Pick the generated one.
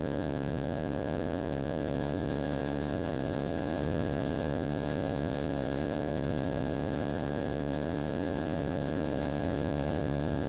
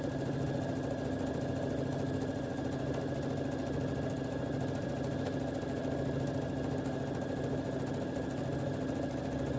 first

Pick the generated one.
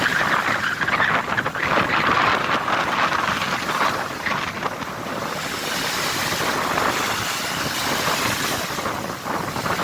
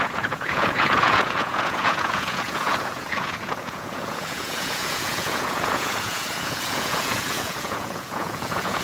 second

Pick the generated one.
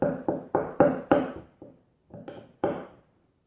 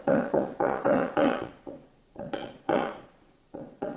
second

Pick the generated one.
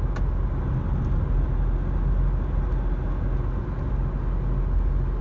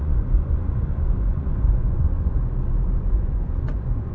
second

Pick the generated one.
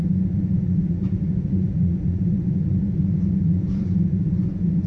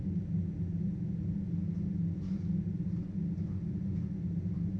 first